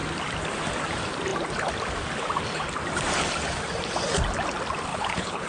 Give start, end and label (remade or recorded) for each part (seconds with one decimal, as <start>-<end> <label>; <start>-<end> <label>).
0.0-4.9 recorded; 4.9-5.5 remade